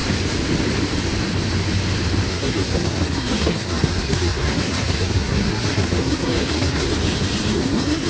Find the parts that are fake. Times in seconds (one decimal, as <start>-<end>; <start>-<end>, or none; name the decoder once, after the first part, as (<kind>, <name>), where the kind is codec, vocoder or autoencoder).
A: 2.3-6.9 (codec, SNAC); 7.5-8.1